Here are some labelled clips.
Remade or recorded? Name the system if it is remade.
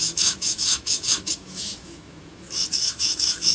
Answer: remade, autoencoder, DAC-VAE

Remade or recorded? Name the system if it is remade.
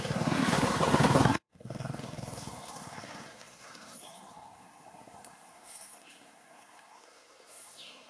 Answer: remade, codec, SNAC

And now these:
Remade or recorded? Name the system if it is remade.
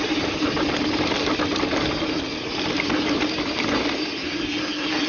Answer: recorded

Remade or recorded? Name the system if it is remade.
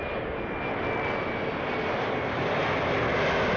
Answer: recorded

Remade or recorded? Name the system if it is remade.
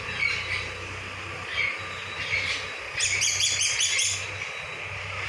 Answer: recorded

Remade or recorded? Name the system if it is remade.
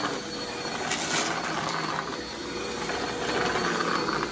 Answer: recorded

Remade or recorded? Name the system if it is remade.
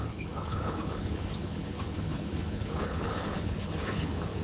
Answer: remade, codec, HILCodec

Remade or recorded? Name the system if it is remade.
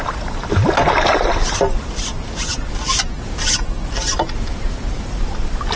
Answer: recorded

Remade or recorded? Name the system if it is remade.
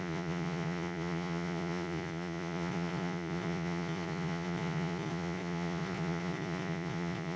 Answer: remade, vocoder, Vocos